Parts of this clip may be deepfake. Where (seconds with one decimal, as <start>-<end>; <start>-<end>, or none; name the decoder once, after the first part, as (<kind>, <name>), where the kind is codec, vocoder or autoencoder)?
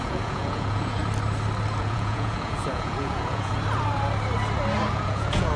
0.0-1.0 (vocoder, Vocos); 1.8-3.5; 4.9-5.6